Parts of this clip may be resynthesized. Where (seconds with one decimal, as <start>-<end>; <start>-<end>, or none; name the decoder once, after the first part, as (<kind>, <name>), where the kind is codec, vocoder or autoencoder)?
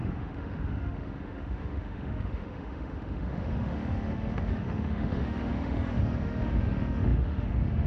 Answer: 0.0-7.9 (autoencoder, DAC-VAE)